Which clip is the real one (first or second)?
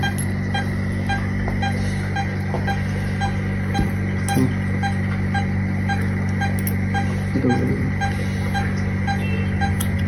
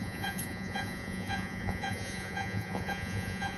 first